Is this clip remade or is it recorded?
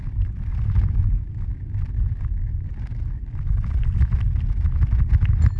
recorded